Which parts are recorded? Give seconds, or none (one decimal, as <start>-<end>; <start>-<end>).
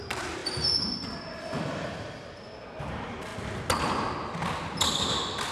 0.0-5.5